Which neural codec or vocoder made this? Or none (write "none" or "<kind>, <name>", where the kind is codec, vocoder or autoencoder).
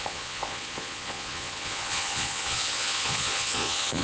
vocoder, Vocos